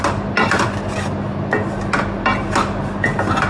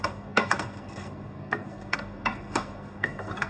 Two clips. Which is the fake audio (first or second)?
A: second